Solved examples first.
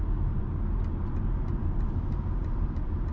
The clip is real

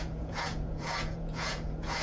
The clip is fake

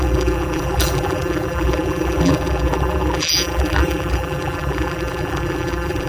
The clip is fake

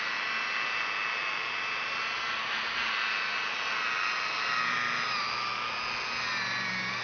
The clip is real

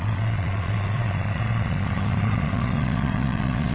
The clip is fake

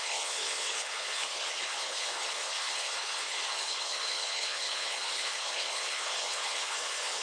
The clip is fake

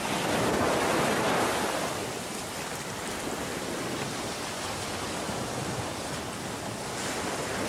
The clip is real